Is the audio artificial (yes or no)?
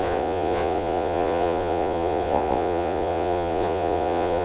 yes